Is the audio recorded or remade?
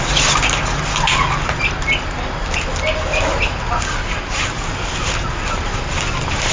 recorded